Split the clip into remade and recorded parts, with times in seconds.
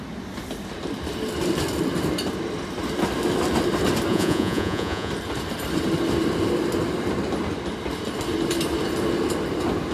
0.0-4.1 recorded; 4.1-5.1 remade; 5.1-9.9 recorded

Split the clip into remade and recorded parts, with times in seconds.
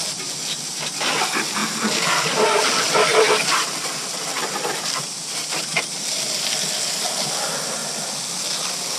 0.0-7.8 remade; 7.8-9.0 recorded